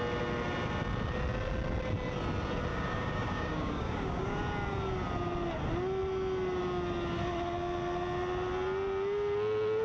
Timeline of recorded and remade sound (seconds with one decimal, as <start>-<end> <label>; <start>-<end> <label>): 0.0-2.7 recorded; 2.7-4.4 remade; 4.4-9.8 recorded